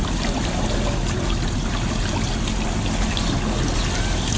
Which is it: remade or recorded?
recorded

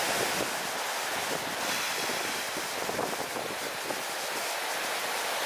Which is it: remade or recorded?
recorded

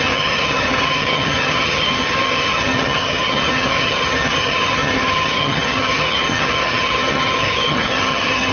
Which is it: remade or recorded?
remade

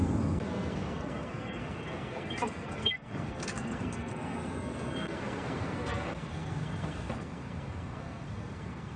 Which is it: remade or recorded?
remade